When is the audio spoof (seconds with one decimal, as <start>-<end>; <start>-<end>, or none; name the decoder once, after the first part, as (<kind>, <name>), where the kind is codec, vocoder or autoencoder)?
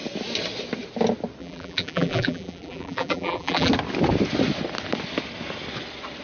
1.4-3.7 (vocoder, BigVGAN v2)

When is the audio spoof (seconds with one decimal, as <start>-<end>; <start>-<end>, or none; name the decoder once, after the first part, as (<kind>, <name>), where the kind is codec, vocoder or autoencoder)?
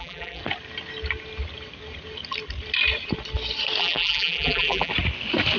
0.0-0.4 (vocoder, BigVGAN v2); 3.8-4.9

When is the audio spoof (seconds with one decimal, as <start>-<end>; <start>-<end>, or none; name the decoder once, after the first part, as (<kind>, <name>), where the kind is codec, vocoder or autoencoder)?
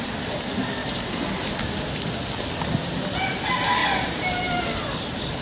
0.8-1.6 (vocoder, BigVGAN v2); 3.8-4.6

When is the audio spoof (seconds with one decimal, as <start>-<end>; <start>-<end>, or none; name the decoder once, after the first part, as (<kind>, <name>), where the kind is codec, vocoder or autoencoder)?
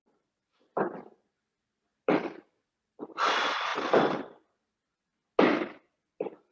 0.0-3.7 (vocoder, BigVGAN v2); 5.5-6.5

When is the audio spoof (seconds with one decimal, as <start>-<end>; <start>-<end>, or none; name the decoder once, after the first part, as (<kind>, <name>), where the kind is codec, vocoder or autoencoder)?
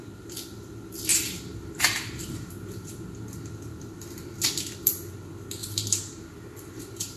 1.1-2.9 (vocoder, BigVGAN v2); 5.6-7.2